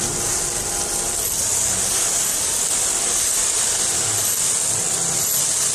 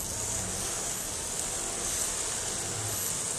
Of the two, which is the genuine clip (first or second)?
second